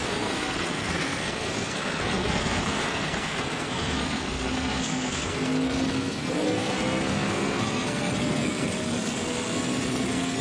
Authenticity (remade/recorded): remade